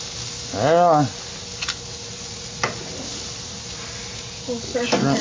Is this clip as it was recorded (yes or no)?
yes